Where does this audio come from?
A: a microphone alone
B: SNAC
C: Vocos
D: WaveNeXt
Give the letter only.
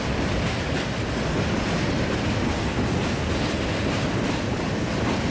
A